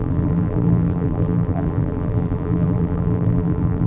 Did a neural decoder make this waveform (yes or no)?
yes